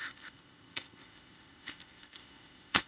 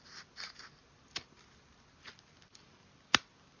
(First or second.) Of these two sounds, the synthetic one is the first